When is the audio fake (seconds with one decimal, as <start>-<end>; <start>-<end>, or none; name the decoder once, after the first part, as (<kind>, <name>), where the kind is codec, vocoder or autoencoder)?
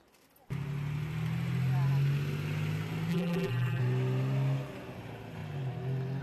3.1-3.8 (vocoder, BigVGAN v2)